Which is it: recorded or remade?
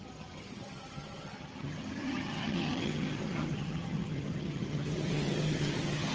remade